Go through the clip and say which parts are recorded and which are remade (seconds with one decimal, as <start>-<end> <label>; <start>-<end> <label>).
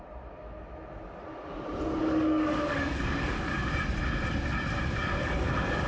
0.0-2.0 recorded; 2.0-3.6 remade; 3.6-5.0 recorded; 5.0-5.9 remade